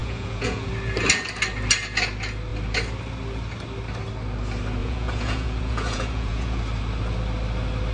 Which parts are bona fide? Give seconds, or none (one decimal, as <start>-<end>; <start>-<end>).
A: 0.7-4.8; 6.6-7.9